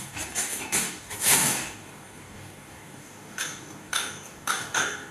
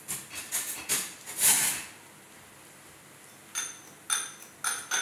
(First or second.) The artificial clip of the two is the first